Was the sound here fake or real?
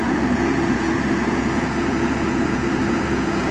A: fake